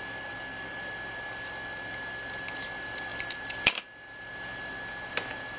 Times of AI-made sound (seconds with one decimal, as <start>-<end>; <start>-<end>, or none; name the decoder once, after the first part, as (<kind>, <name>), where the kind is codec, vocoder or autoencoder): none